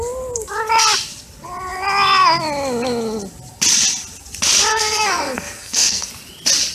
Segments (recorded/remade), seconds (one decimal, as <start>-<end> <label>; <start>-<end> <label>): 0.0-4.7 recorded; 4.7-6.1 remade; 6.1-6.7 recorded